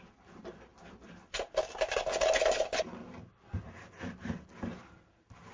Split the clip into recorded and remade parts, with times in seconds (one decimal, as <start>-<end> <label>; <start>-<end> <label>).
0.0-5.5 recorded